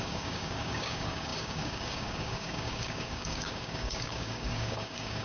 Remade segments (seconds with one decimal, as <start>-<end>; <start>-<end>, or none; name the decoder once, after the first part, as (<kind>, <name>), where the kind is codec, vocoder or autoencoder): 0.0-5.2 (codec, DAC)